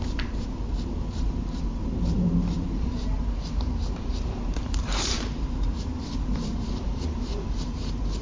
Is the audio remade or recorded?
remade